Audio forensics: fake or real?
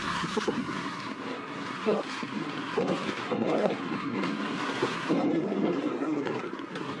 fake